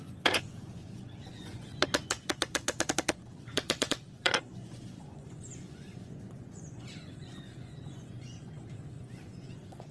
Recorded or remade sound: remade